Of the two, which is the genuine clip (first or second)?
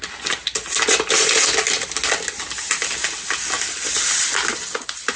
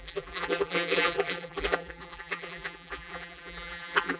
first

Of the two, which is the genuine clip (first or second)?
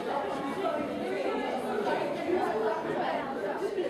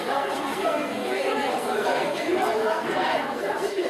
first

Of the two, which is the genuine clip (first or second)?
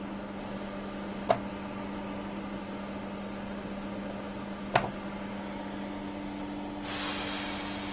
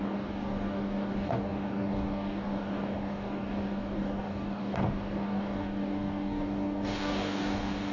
first